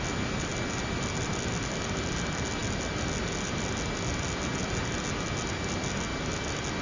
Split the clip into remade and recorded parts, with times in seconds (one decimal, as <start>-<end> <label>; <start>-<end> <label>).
0.0-6.8 recorded